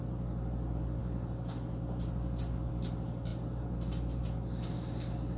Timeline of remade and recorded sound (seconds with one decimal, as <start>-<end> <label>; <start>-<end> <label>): 0.0-5.4 recorded